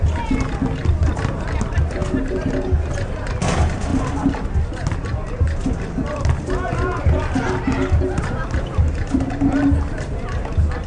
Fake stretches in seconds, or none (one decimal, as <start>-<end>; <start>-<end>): none